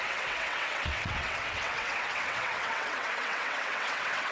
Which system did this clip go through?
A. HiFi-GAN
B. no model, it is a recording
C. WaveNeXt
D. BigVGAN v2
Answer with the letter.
C